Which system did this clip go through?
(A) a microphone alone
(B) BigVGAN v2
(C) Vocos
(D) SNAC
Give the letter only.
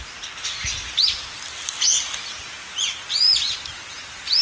A